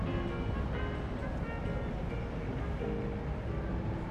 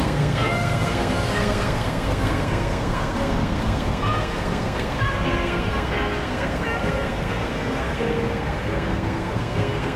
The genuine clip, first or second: first